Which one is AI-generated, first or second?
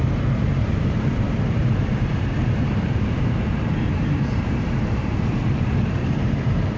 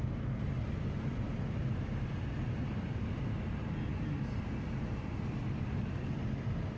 first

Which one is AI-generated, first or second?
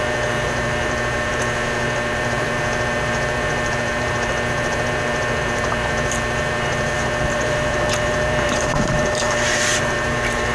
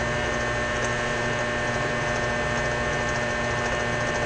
first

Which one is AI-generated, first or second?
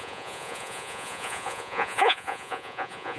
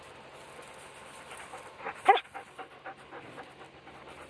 first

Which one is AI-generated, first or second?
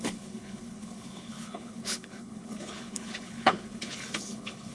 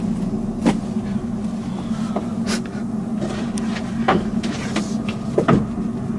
first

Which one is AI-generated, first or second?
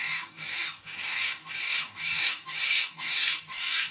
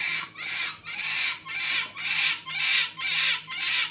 first